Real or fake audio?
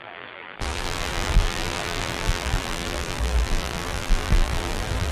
fake